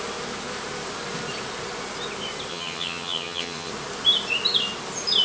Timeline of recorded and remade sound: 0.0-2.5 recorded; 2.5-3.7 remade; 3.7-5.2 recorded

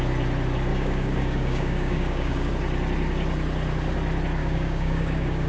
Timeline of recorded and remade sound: 0.0-0.7 recorded; 0.7-2.5 remade; 2.5-4.4 recorded; 4.4-5.5 remade